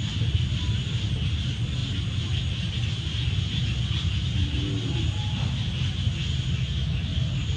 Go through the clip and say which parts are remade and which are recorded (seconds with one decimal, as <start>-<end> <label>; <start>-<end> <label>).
0.0-7.6 recorded